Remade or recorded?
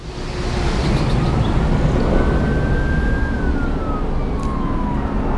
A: recorded